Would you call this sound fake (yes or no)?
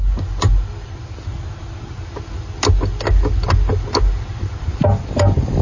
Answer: no